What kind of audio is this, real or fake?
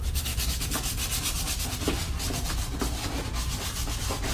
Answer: real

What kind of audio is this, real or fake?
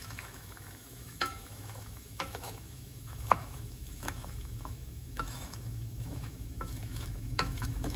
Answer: fake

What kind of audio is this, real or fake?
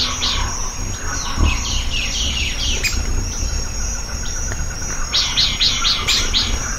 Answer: real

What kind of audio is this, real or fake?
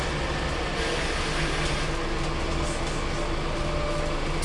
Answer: real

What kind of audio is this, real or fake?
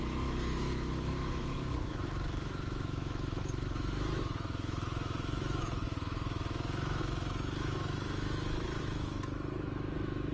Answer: fake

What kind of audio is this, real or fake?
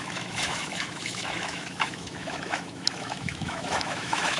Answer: fake